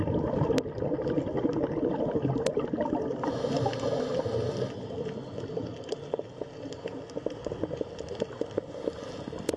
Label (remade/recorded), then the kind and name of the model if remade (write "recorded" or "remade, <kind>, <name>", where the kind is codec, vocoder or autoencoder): recorded